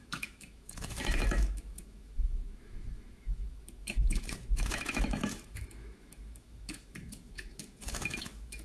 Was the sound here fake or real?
fake